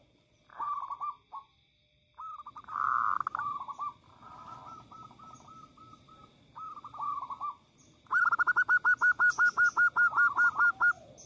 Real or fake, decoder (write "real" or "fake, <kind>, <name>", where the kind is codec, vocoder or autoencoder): real